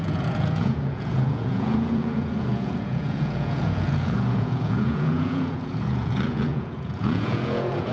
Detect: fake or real fake